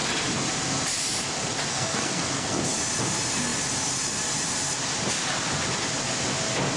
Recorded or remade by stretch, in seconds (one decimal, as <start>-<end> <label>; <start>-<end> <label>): 0.0-1.7 recorded; 1.7-2.6 remade; 2.6-6.8 recorded